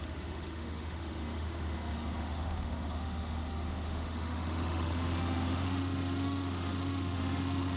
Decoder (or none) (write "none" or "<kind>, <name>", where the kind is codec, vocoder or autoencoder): autoencoder, DAC-VAE